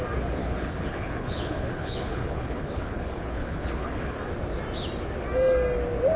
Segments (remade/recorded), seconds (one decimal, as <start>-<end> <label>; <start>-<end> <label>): 0.0-0.4 recorded; 0.4-4.1 remade; 4.1-6.2 recorded